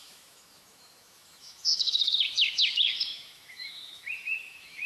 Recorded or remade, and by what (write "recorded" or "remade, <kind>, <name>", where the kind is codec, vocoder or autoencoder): remade, autoencoder, DAC-VAE